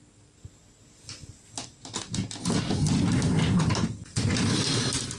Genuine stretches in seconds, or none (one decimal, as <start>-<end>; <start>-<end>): 0.0-5.2